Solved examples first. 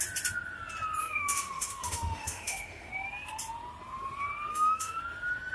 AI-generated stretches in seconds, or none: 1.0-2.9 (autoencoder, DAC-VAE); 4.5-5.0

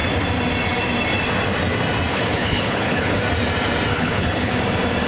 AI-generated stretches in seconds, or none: 2.1-3.2 (codec, HILCodec); 3.9-4.5

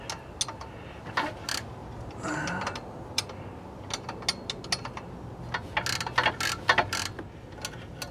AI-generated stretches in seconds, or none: none

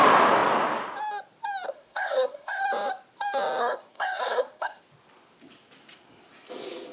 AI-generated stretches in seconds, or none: 1.7-2.6 (codec, SNAC); 3.6-4.8

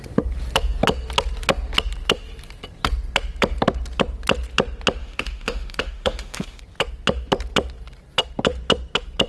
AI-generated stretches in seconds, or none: 5.0-6.6 (autoencoder, DAC-VAE)

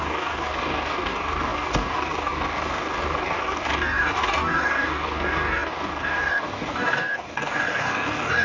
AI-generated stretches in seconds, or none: 0.0-8.4 (codec, DAC)